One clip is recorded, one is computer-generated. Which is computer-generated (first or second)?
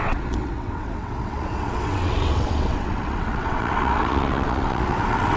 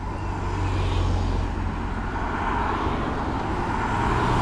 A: first